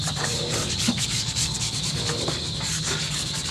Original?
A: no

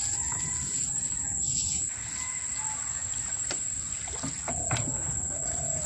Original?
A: yes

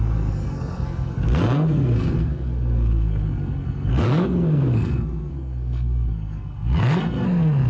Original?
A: no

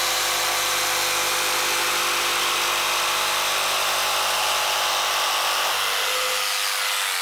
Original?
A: yes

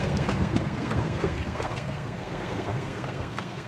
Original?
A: no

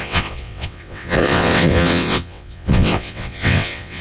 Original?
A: no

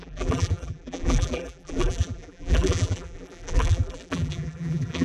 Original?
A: no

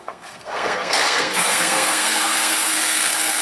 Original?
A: no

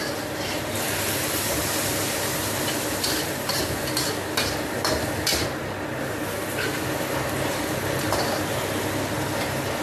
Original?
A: yes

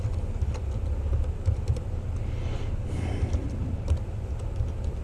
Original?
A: yes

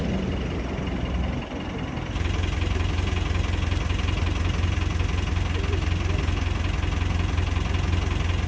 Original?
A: yes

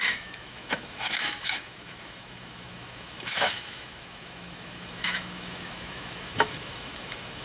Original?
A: no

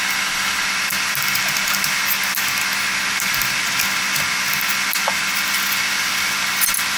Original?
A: yes